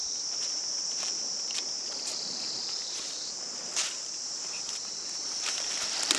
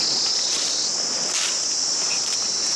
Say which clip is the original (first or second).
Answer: second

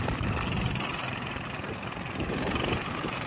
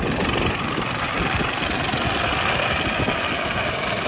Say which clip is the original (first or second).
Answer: second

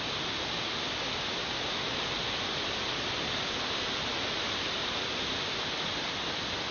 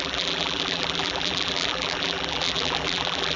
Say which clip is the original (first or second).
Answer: first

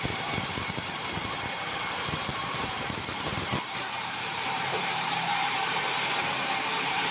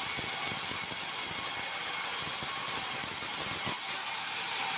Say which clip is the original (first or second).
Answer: second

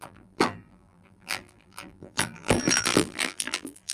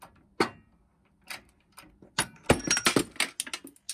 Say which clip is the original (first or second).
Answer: second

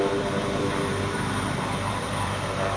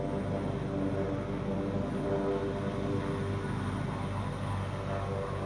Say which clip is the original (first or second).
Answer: second